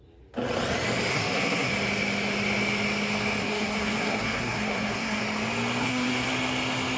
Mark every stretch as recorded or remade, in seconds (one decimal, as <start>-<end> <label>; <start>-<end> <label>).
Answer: 0.0-1.1 recorded; 1.1-1.7 remade; 1.7-3.4 recorded; 3.4-5.2 remade; 5.2-5.8 recorded; 5.8-6.3 remade; 6.3-7.0 recorded